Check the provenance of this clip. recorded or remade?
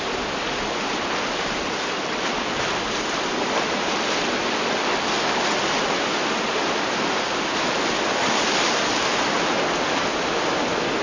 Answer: recorded